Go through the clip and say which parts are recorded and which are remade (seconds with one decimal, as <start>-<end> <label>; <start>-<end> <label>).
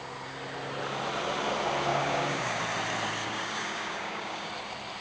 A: 0.0-1.9 recorded; 1.9-2.6 remade; 2.6-3.2 recorded; 3.2-4.5 remade; 4.5-5.0 recorded